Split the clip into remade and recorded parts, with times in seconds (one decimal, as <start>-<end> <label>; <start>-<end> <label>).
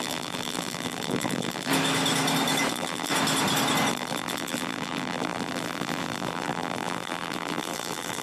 0.0-1.7 remade; 1.7-2.7 recorded; 2.7-3.1 remade; 3.1-3.9 recorded; 3.9-8.2 remade